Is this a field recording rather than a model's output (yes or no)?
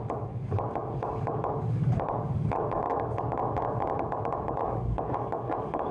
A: no